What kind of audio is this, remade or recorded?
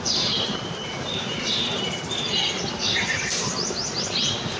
remade